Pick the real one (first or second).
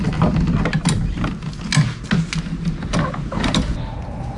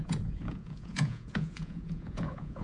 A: first